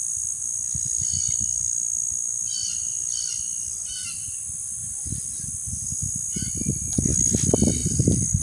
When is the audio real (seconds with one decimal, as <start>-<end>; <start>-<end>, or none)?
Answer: 0.0-7.8